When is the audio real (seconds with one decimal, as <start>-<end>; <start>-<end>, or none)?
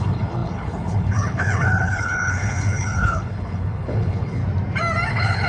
4.4-5.1